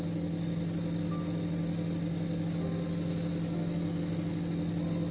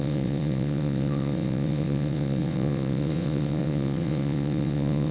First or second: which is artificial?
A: second